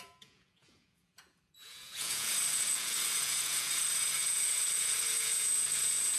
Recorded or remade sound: remade